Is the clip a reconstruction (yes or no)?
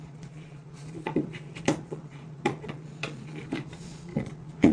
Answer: yes